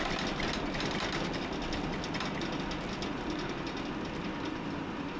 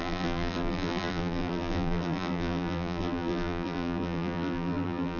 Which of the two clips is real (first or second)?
first